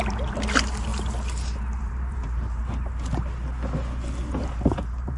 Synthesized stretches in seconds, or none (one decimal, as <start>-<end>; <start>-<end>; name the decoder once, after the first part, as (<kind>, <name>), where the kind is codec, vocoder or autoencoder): 0.0-0.9 (vocoder, BigVGAN v2); 1.8-2.6; 4.2-5.2